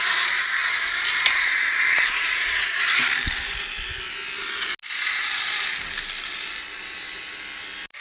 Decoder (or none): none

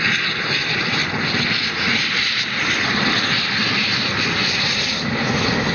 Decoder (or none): none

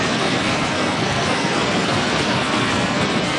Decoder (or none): codec, SNAC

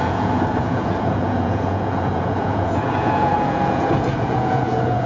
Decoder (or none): vocoder, Vocos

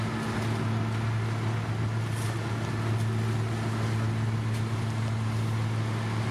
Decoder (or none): none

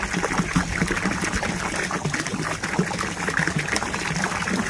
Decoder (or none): none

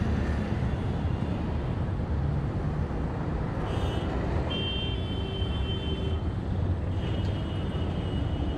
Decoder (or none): none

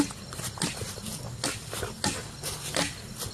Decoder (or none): none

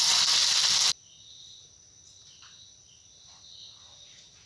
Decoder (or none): none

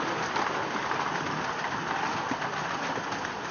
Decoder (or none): none